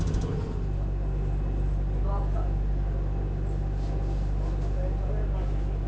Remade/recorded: recorded